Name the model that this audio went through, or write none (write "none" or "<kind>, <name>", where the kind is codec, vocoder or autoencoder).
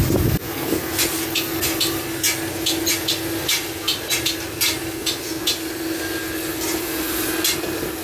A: none